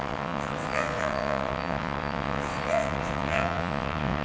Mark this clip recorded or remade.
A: remade